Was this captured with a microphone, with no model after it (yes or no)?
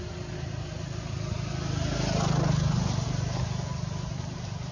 yes